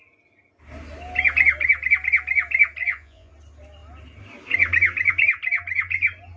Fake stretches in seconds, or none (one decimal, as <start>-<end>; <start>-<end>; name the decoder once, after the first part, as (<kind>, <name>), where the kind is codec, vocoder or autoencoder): 2.8-3.3 (vocoder, Vocos)